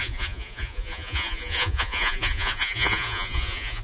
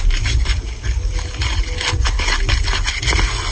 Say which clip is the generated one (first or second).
first